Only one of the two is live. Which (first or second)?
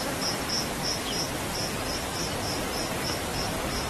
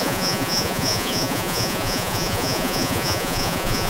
first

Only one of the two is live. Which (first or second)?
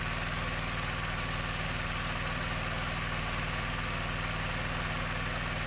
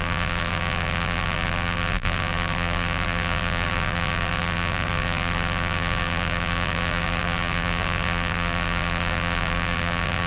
first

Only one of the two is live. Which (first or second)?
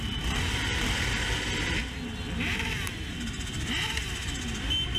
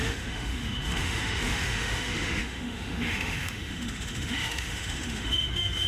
first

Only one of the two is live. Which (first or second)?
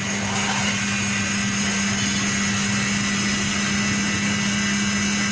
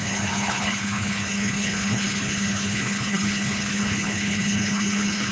first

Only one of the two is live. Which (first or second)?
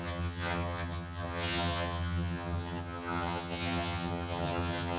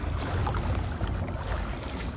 second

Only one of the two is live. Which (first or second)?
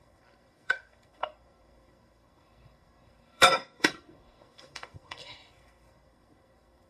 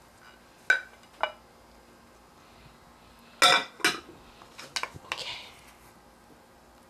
second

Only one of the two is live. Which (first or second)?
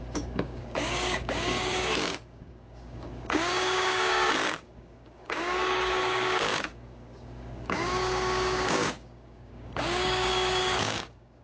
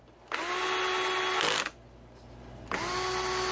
second